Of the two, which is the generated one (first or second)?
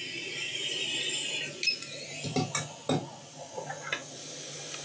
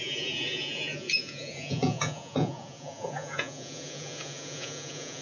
second